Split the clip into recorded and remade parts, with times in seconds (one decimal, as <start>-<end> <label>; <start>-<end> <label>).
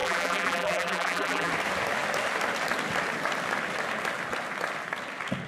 0.0-1.5 remade; 1.5-5.5 recorded